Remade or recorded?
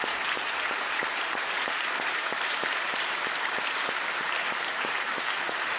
remade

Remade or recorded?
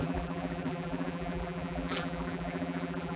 remade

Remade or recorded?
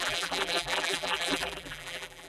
remade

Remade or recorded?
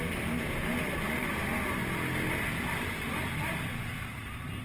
recorded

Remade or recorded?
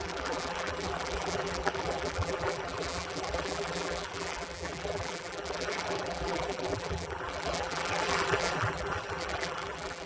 remade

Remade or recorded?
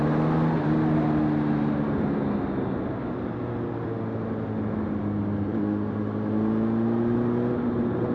recorded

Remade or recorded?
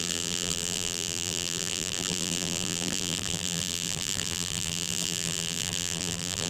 remade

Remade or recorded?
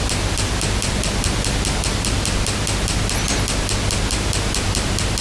recorded